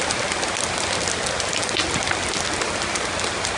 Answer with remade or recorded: recorded